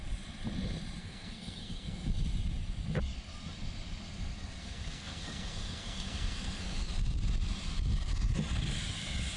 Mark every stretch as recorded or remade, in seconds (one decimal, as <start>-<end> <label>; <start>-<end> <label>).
0.0-1.0 recorded; 1.0-2.1 remade; 2.1-4.6 recorded; 4.6-6.9 remade; 6.9-9.4 recorded